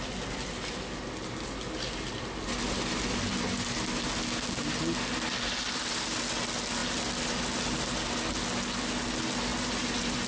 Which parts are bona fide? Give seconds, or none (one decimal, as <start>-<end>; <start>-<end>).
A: 0.0-10.3